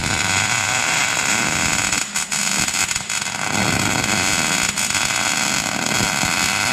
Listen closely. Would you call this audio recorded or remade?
recorded